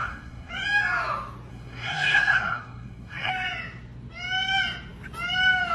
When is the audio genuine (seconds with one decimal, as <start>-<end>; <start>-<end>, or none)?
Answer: 0.5-1.5; 3.3-5.7